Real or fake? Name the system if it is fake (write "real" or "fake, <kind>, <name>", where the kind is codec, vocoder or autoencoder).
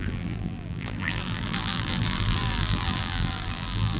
fake, vocoder, BigVGAN v2